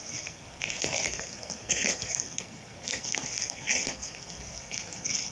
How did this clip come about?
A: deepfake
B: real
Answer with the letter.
A